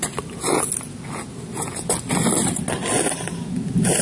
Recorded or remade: recorded